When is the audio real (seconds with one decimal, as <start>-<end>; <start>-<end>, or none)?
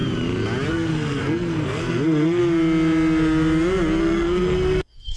0.0-0.7; 2.4-4.0